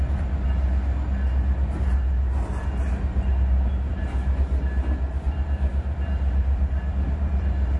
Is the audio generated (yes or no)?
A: no